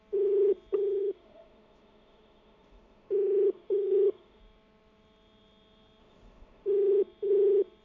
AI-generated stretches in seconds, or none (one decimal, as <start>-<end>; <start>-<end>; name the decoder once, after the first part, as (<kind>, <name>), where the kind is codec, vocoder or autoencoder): 1.0-4.4 (autoencoder, DAC-VAE); 6.0-6.9